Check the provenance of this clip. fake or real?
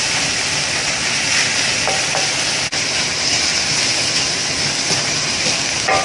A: real